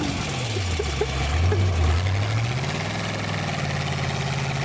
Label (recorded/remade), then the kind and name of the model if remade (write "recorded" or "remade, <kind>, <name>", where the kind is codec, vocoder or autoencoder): recorded